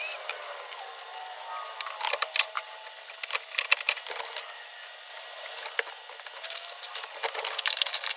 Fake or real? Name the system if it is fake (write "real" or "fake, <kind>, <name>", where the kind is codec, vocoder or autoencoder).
real